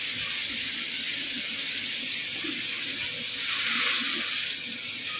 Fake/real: real